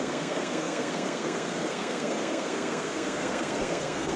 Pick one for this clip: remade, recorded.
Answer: remade